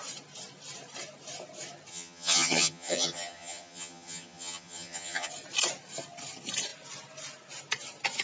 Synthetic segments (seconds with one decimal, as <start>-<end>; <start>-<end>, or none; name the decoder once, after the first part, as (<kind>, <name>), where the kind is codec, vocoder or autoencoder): 1.9-5.3 (vocoder, HiFi-GAN)